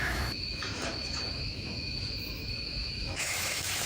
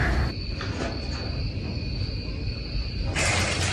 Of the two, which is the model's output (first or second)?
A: first